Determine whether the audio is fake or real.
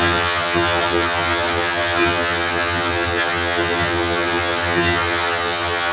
fake